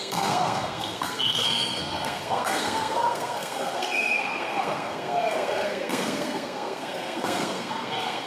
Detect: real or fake fake